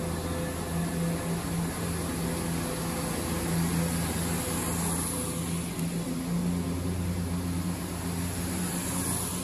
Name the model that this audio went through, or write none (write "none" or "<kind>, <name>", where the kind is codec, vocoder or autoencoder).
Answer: none